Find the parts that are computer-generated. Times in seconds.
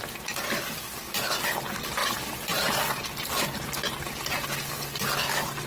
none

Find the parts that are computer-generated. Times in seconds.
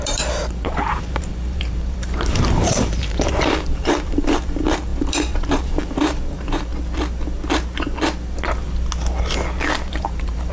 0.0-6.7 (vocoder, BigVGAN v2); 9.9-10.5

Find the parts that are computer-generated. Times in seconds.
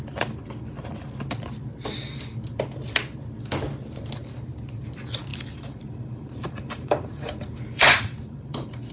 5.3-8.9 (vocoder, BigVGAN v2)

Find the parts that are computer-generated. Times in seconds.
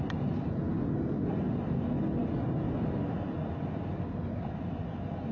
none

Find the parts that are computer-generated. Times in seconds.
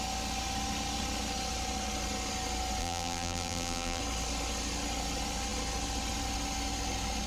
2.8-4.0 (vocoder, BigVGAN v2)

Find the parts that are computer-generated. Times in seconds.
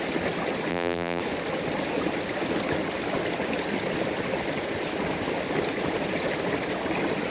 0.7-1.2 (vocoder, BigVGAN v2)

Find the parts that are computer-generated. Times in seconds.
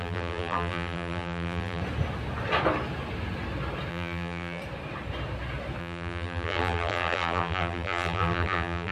0.0-1.8 (vocoder, BigVGAN v2); 3.9-4.6; 5.8-8.9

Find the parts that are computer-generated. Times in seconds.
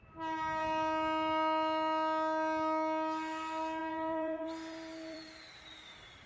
3.8-6.3 (vocoder, BigVGAN v2)